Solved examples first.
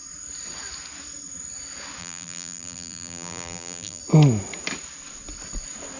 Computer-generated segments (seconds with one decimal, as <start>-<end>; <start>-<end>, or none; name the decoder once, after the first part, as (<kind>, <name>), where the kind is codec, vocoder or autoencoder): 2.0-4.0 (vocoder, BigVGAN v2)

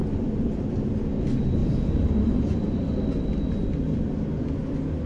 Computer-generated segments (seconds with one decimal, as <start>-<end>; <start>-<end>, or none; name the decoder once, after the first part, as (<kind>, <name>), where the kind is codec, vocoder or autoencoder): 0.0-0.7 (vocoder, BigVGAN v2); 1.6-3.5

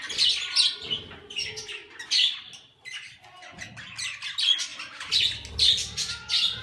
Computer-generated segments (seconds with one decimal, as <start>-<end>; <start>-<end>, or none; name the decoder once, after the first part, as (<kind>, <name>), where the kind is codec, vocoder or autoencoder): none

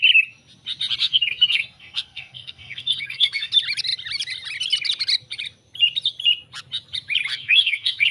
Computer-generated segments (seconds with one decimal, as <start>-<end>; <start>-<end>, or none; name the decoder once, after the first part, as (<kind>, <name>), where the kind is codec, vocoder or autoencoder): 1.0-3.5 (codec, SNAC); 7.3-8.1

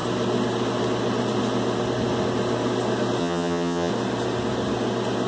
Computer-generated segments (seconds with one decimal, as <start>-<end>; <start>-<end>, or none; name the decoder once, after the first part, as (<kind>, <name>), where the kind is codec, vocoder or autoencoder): 3.2-3.9 (vocoder, HiFi-GAN)